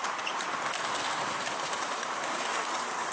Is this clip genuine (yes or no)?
yes